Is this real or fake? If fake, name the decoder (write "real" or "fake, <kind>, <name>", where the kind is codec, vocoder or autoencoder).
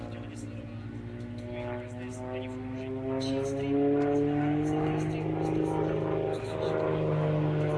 real